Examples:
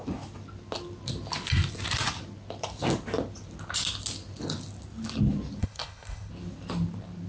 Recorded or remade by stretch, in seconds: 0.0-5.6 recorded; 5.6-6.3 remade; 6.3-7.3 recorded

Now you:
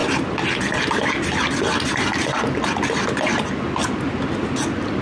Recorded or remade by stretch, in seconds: 0.0-5.0 recorded